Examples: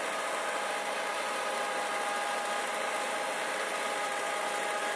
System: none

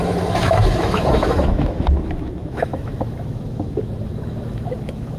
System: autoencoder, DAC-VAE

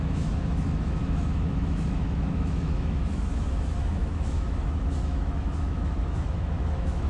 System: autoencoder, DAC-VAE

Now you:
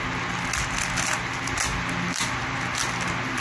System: none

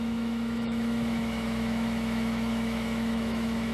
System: autoencoder, DAC-VAE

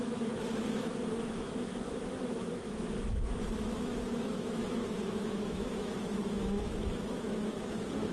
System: autoencoder, DAC-VAE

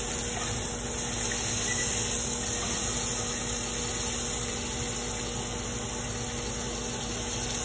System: none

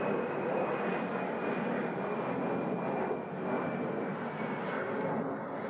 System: none